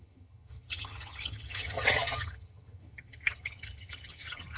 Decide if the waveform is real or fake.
fake